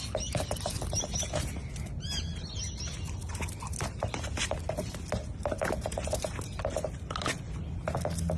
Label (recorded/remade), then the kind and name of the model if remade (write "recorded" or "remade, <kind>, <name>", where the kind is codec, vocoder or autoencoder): recorded